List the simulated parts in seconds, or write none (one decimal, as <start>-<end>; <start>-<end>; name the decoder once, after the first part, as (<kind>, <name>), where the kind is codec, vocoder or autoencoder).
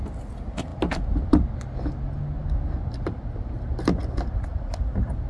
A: none